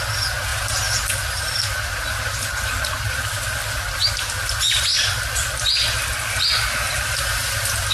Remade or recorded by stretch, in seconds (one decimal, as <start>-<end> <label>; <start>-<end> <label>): 0.0-7.9 recorded